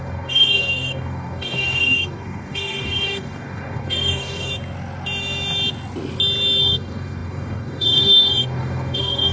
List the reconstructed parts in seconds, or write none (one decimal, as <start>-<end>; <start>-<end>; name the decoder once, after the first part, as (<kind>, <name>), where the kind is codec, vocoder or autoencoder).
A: 0.0-4.5 (codec, DAC); 6.6-9.3